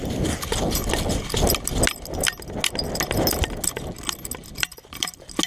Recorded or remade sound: recorded